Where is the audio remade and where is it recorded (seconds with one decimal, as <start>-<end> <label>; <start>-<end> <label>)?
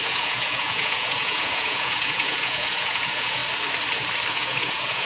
0.0-3.4 remade; 3.4-4.3 recorded; 4.3-5.1 remade